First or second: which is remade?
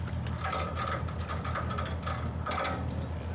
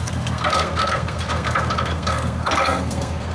second